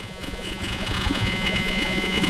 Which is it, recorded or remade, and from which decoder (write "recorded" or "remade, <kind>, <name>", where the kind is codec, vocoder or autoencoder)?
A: remade, vocoder, Vocos